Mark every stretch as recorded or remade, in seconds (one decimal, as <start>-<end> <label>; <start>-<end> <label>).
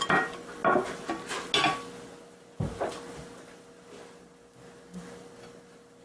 0.0-6.0 recorded